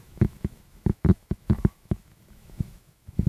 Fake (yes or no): yes